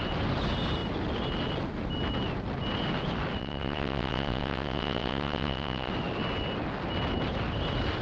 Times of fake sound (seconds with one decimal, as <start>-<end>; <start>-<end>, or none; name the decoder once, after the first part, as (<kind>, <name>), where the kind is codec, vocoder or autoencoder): 3.4-5.9 (vocoder, WaveNeXt)